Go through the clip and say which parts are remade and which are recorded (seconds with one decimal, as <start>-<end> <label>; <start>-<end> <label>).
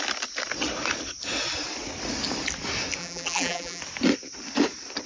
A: 0.0-3.0 recorded; 3.0-3.8 remade; 3.8-5.1 recorded